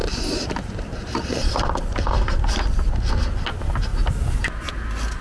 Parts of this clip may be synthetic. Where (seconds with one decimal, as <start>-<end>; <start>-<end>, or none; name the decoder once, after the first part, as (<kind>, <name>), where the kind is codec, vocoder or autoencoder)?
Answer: 0.0-3.1 (vocoder, BigVGAN v2); 3.9-4.7